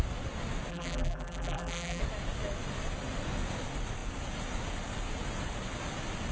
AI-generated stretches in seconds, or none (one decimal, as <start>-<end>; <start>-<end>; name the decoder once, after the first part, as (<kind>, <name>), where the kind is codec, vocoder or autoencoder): 0.7-2.0 (vocoder, BigVGAN v2)